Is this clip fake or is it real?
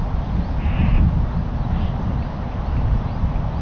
real